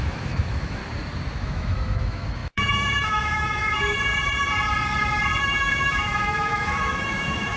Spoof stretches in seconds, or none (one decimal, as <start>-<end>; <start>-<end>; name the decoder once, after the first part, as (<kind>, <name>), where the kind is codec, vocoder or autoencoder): 0.0-0.8 (autoencoder, DAC-VAE); 1.4-4.1; 5.4-7.6